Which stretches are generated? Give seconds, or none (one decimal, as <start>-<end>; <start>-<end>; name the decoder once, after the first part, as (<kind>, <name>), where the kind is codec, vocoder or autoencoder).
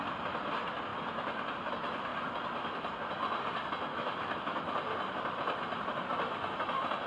3.9-4.6 (autoencoder, DAC-VAE)